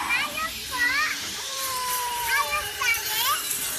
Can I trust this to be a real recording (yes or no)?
no